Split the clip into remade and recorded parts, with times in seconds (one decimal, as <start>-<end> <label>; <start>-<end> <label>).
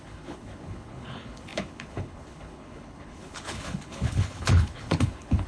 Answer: 0.0-5.5 remade